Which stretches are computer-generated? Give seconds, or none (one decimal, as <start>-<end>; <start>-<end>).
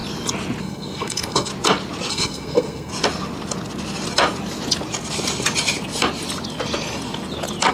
0.6-1.5; 2.1-2.9